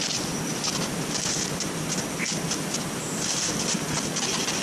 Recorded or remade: recorded